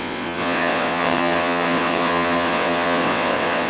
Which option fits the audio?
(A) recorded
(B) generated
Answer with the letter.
B